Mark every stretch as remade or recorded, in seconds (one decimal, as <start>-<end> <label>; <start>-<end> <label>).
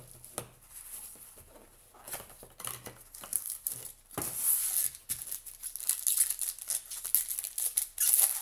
0.0-3.3 recorded; 3.3-3.9 remade; 3.9-8.4 recorded